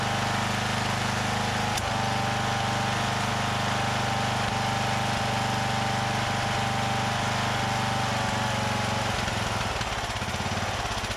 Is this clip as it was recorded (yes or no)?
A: yes